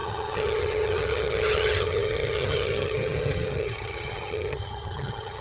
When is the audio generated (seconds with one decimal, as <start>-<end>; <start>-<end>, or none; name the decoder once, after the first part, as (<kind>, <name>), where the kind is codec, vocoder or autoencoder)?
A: 0.0-5.4 (vocoder, HiFi-GAN)